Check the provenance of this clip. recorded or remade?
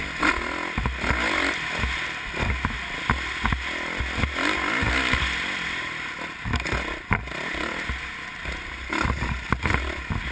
recorded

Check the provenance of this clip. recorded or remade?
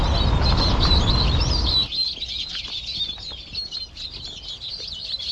recorded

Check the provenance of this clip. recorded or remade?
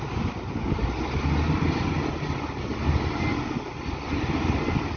recorded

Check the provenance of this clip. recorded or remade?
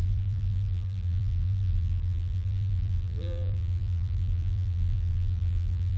remade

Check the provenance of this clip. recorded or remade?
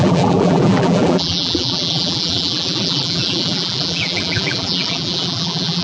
remade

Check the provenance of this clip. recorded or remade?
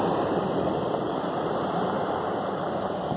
remade